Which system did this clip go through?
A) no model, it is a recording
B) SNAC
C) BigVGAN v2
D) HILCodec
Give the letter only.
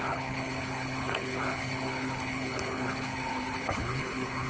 D